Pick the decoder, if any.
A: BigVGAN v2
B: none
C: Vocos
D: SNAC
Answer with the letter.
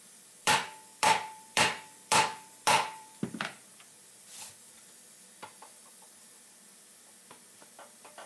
A